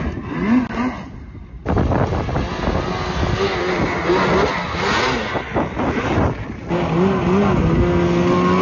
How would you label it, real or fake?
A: real